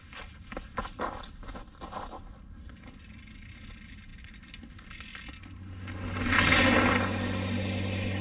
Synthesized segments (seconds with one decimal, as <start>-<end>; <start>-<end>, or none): none